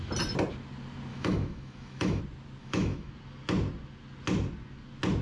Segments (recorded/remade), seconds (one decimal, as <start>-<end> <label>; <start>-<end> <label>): 0.0-1.1 recorded; 1.1-2.2 remade; 2.2-2.6 recorded; 2.6-3.1 remade; 3.1-5.2 recorded